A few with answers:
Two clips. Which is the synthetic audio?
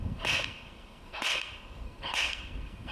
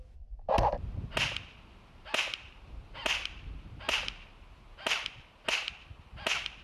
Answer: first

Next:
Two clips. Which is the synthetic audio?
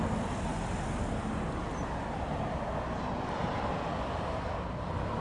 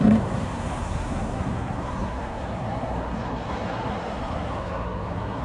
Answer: second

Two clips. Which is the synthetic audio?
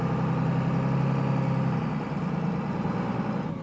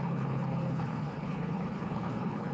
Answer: second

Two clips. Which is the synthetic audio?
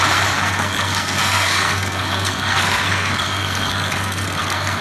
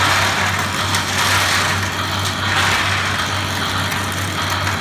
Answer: first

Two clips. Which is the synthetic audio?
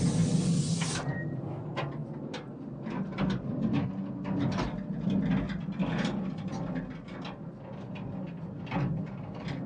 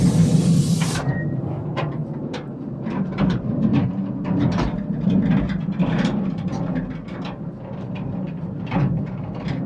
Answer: second